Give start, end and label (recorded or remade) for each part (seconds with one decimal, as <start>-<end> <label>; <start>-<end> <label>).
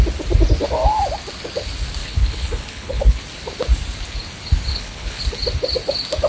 0.0-2.0 recorded; 2.0-3.2 remade; 3.2-4.7 recorded; 4.7-5.2 remade; 5.2-6.3 recorded